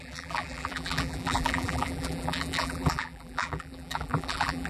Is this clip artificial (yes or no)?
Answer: yes